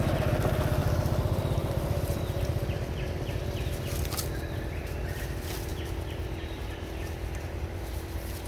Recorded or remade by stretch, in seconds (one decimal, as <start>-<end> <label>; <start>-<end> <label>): 0.0-0.8 recorded; 0.8-3.6 remade; 3.6-8.5 recorded